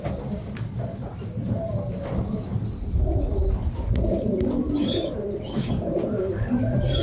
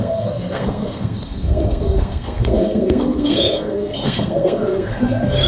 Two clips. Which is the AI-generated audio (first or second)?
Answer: second